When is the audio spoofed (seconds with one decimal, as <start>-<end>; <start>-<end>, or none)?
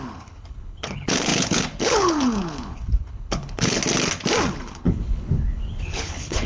0.0-3.8; 4.5-6.5